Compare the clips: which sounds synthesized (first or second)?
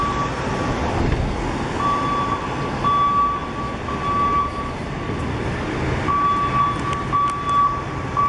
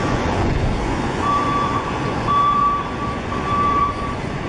second